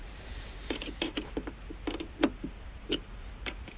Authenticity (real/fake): fake